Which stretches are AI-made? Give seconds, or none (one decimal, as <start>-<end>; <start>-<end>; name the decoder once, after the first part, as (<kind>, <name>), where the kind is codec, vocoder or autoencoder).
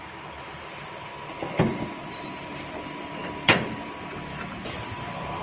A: 0.0-1.1 (vocoder, BigVGAN v2); 2.1-5.4